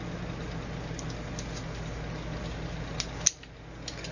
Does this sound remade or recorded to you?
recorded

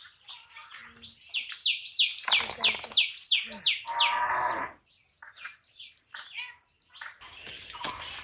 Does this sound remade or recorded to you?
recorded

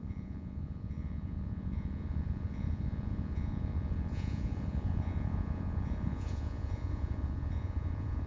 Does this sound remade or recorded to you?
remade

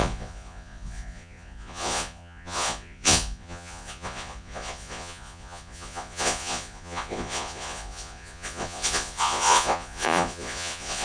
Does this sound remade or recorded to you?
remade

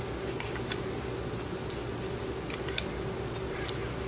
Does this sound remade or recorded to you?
recorded